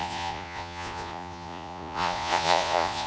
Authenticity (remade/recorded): remade